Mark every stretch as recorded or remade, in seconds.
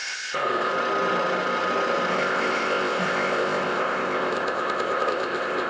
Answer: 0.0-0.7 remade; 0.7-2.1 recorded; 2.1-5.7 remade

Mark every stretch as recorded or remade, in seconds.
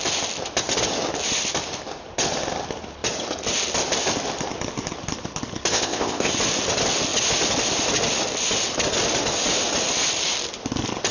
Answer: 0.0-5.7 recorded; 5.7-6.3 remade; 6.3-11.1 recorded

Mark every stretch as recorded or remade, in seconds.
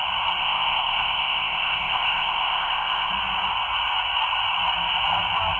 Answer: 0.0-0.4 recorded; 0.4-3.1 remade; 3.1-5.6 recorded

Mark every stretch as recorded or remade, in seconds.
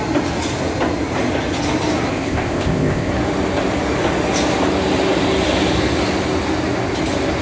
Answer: 0.0-2.1 recorded; 2.1-3.1 remade; 3.1-7.4 recorded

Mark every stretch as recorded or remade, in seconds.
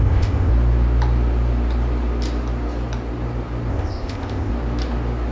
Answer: 0.0-0.5 remade; 0.5-3.7 recorded; 3.7-4.5 remade; 4.5-5.3 recorded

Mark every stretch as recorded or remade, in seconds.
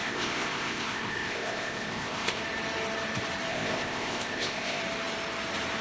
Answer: 0.0-2.4 remade; 2.4-3.5 recorded; 3.5-4.8 remade; 4.8-5.8 recorded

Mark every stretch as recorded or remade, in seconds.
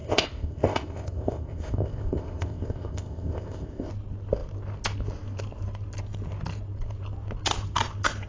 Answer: 0.0-3.9 remade; 3.9-8.3 recorded